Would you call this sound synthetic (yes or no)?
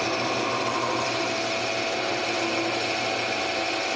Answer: no